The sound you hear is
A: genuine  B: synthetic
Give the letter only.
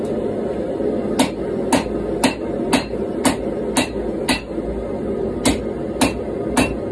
A